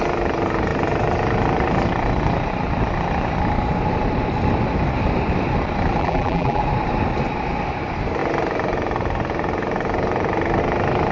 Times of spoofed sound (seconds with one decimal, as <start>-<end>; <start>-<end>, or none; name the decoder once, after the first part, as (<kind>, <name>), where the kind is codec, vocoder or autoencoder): 6.0-6.6 (vocoder, BigVGAN v2)